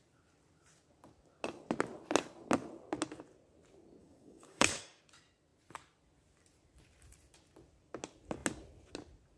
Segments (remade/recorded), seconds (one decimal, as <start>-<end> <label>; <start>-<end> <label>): 0.0-4.0 recorded; 4.0-5.0 remade; 5.0-9.4 recorded